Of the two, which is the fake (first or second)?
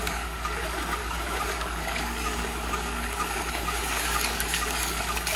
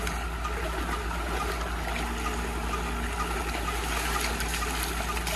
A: first